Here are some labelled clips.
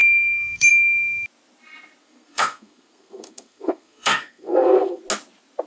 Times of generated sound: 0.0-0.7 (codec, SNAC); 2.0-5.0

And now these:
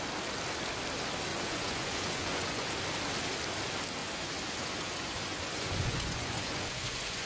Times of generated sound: 1.3-2.7 (vocoder, Vocos); 4.0-7.3

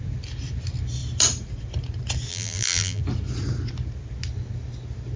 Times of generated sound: 2.3-3.0 (vocoder, BigVGAN v2)

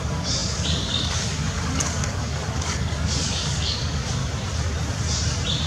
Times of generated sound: 0.0-4.2 (codec, DAC)

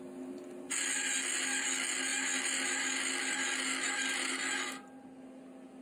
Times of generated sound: none

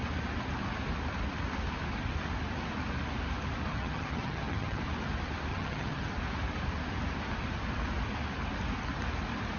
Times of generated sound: 3.7-4.8 (vocoder, HiFi-GAN); 5.5-6.1

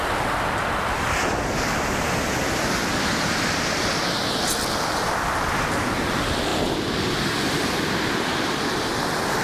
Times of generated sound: 3.1-3.8 (vocoder, BigVGAN v2)

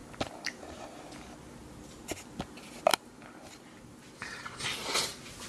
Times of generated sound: 0.0-1.0 (vocoder, BigVGAN v2); 2.9-4.6